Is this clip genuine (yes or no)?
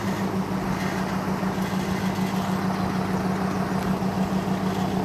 yes